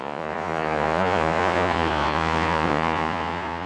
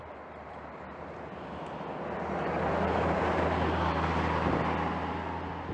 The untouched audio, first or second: second